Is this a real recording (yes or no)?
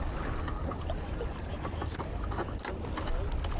yes